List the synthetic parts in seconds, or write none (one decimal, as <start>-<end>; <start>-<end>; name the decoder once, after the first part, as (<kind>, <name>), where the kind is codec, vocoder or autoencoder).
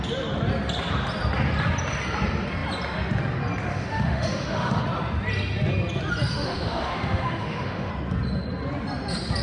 3.7-4.8 (autoencoder, DAC-VAE); 6.3-7.9